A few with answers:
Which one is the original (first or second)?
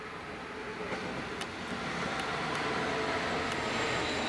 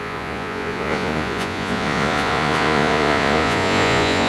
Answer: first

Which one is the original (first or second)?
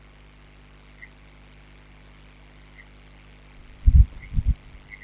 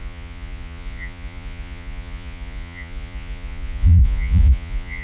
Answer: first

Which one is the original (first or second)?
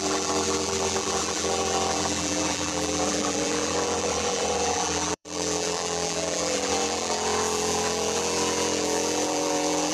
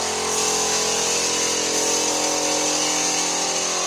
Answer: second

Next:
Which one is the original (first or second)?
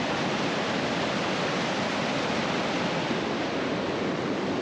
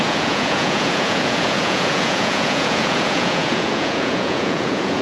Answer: first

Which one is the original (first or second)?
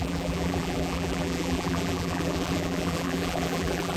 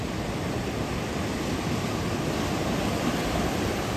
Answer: second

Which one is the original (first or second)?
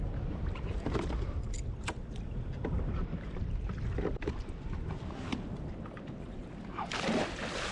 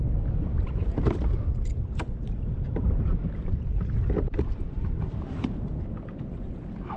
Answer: first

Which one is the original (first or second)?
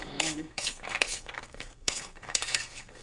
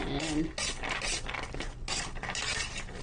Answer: second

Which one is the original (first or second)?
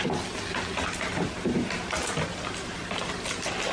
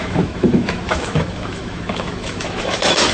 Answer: first